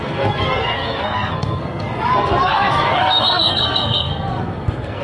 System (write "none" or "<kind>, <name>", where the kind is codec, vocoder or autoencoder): codec, SNAC